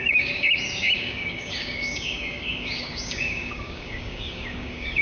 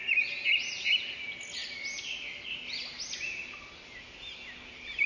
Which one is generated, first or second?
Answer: first